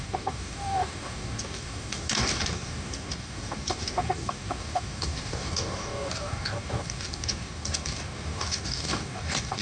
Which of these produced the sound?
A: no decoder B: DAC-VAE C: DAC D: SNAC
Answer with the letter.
C